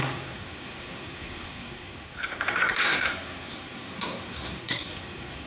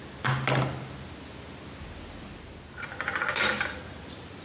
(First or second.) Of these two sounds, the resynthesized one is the first